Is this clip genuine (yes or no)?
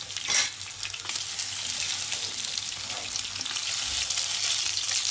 yes